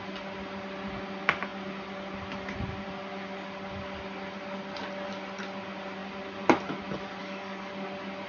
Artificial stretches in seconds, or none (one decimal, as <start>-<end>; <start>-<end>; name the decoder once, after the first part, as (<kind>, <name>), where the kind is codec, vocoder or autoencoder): 7.2-7.7 (codec, DAC)